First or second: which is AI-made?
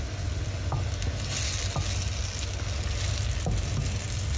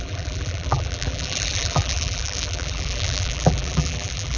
second